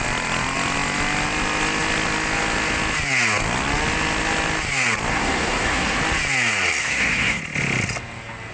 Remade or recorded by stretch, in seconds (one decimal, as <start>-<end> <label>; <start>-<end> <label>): 0.0-5.1 recorded; 5.1-6.0 remade; 6.0-6.8 recorded; 6.8-7.4 remade; 7.4-8.5 recorded